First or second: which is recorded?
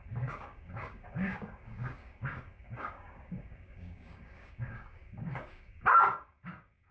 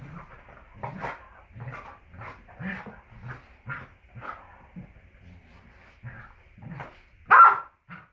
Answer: second